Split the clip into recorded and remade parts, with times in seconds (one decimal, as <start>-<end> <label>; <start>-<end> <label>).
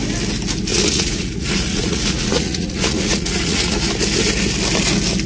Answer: 0.0-0.7 recorded; 0.7-3.9 remade; 3.9-5.3 recorded